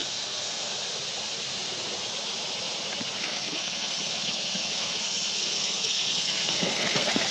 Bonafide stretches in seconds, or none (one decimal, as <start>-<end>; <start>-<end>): 0.7-3.2